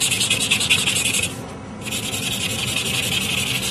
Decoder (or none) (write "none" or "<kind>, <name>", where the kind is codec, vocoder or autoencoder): none